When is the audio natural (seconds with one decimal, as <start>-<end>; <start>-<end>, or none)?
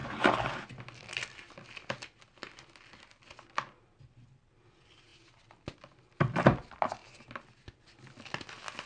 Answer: 0.0-8.9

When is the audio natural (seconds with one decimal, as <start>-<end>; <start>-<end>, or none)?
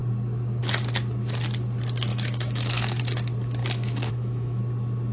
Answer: 0.0-2.1; 3.0-3.6; 4.6-5.1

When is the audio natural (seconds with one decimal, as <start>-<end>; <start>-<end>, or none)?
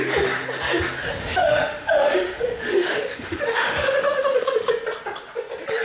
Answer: 0.0-1.2; 4.7-5.8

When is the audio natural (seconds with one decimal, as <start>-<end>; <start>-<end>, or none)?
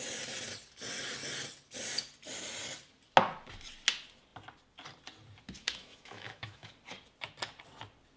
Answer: 0.0-5.6; 6.7-8.2